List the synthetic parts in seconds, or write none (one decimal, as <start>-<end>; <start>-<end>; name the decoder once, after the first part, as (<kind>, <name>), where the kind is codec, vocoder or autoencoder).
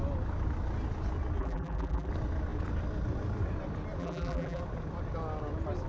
1.4-2.1 (vocoder, BigVGAN v2); 4.0-4.6